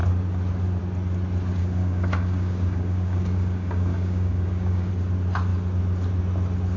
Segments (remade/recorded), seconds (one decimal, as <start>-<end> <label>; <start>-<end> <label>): 0.0-1.6 recorded; 1.6-4.9 remade; 4.9-6.8 recorded